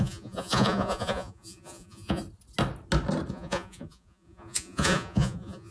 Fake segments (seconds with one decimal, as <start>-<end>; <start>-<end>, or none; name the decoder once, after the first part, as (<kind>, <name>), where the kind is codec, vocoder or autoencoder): 0.0-2.2 (vocoder, Vocos); 3.3-5.7